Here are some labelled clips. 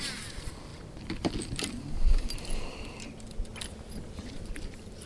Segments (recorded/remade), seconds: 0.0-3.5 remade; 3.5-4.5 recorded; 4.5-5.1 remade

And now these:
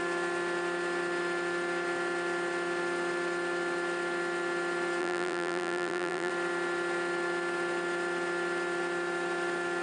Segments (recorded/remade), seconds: 0.0-5.0 recorded; 5.0-6.3 remade; 6.3-9.8 recorded

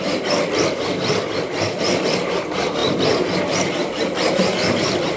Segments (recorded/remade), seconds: 0.0-5.2 recorded

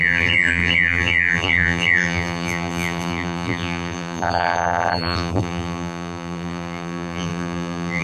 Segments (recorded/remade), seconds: 0.0-8.0 remade